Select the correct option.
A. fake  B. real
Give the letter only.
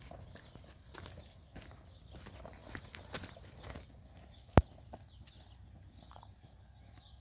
B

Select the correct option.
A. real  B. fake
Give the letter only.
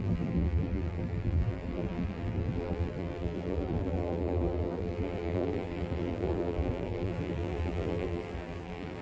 B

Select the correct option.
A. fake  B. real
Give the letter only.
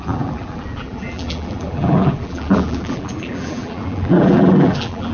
A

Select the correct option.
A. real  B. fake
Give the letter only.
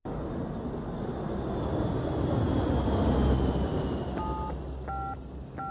A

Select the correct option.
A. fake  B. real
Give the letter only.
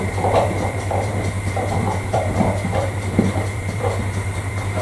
A